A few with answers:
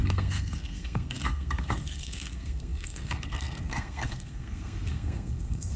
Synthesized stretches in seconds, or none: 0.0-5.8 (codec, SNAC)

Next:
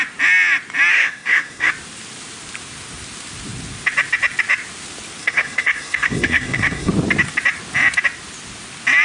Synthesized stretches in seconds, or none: 0.9-1.7 (codec, SNAC); 5.2-6.9

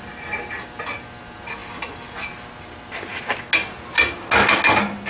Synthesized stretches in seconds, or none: none